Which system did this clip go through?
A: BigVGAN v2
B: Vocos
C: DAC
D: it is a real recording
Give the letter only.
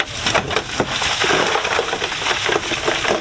D